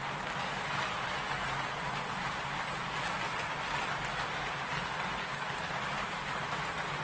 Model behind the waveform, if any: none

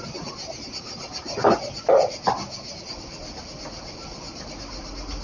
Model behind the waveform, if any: none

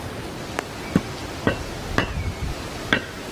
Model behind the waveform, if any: none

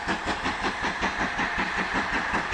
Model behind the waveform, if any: none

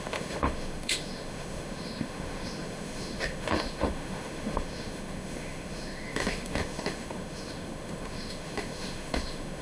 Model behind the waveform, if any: autoencoder, DAC-VAE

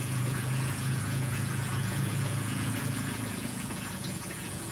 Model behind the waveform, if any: vocoder, Vocos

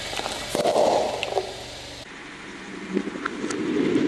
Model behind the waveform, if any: none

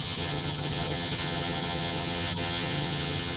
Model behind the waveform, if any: vocoder, HiFi-GAN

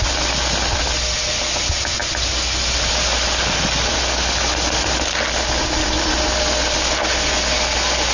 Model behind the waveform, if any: none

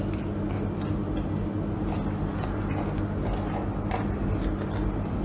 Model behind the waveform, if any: none